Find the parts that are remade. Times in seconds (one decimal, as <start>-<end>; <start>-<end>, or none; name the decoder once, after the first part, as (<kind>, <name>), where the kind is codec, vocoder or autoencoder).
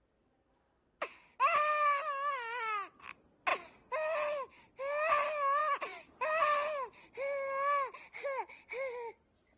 none